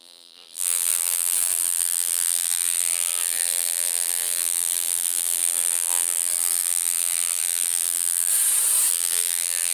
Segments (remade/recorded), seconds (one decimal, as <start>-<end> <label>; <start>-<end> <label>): 0.0-8.3 remade; 8.3-8.9 recorded; 8.9-9.7 remade